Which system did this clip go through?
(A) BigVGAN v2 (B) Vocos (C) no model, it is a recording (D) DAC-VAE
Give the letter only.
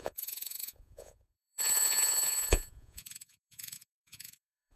B